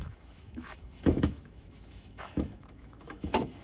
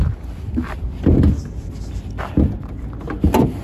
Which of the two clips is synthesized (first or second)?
first